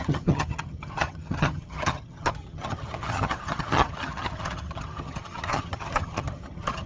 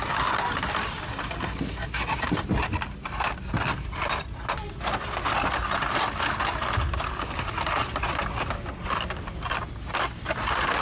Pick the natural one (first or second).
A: second